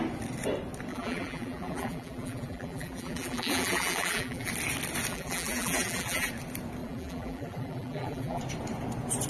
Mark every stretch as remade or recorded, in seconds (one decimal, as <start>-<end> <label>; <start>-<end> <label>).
0.0-0.9 recorded; 0.9-4.5 remade; 4.5-5.1 recorded; 5.1-6.3 remade; 6.3-6.8 recorded; 6.8-8.4 remade; 8.4-9.3 recorded

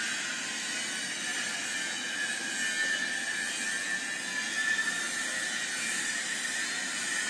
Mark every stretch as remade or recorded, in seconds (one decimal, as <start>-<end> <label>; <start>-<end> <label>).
0.0-6.0 recorded; 6.0-6.5 remade; 6.5-7.3 recorded

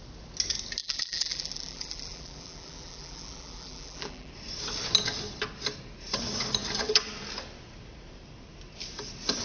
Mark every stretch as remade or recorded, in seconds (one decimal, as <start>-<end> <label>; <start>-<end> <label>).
0.0-0.8 recorded; 0.8-4.3 remade; 4.3-9.4 recorded

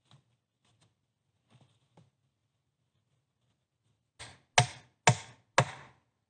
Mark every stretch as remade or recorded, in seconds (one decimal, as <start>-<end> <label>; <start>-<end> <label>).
0.0-6.3 recorded